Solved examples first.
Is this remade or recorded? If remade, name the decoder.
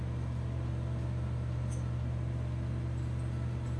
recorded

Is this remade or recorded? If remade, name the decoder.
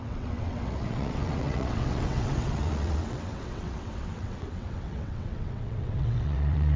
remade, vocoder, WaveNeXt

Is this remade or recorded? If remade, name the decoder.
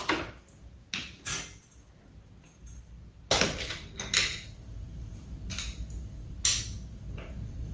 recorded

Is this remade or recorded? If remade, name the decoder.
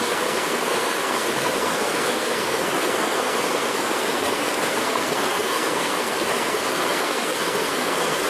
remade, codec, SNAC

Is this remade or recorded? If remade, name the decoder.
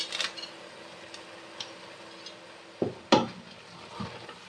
recorded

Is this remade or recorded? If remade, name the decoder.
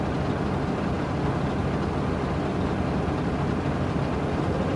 recorded